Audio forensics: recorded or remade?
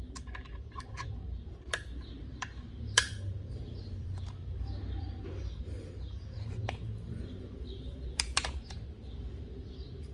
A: remade